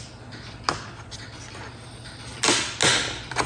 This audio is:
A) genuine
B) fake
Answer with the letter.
A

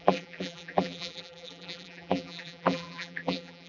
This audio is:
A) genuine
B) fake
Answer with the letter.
B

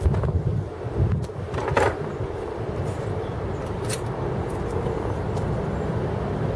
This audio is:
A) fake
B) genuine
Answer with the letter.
B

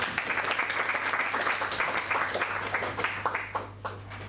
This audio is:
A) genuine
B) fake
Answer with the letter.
A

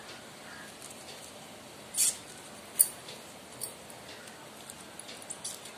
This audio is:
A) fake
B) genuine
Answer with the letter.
B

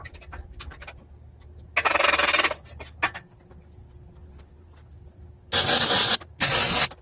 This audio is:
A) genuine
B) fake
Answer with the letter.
A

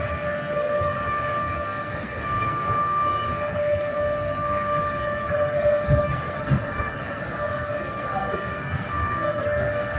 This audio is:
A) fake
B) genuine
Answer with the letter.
A